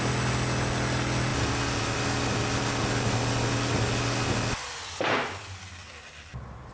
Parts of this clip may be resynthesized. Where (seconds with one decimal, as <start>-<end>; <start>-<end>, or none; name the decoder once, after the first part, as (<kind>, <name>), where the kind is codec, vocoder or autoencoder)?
none